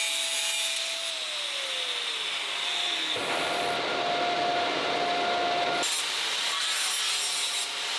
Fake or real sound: real